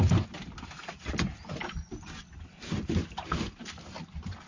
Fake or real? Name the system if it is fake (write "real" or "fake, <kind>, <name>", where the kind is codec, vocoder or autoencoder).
real